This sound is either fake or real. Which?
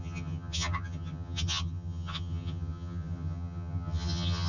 fake